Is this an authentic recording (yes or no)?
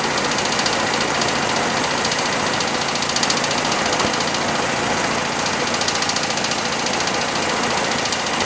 yes